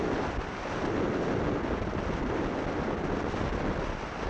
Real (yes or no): yes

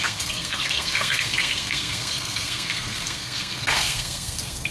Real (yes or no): no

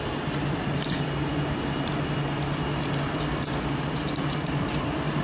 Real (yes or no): yes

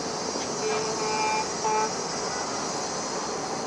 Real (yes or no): yes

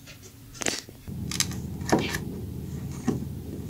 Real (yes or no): yes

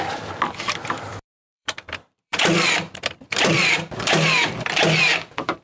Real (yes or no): no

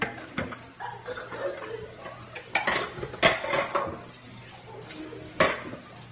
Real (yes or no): yes